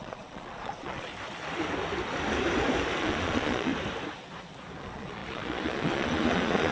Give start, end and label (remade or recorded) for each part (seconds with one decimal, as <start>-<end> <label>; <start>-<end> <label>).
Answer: 0.0-1.1 remade; 1.1-3.0 recorded; 3.0-3.7 remade; 3.7-4.8 recorded; 4.8-6.7 remade